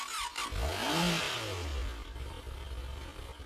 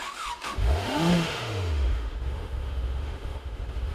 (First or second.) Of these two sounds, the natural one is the first